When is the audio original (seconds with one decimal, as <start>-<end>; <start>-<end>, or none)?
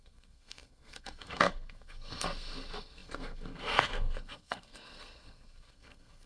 none